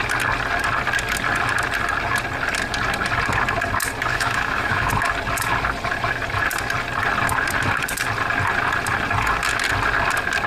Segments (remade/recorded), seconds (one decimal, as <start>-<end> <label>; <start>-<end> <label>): 0.0-4.1 recorded; 4.1-4.9 remade; 4.9-10.5 recorded